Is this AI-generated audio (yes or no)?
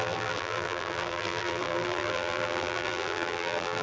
yes